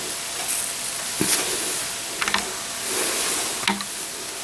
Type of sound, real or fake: real